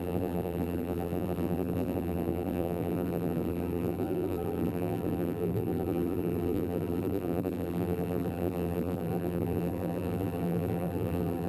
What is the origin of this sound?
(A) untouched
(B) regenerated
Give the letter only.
B